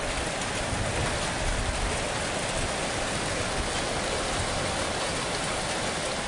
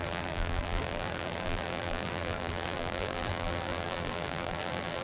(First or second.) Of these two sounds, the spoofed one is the second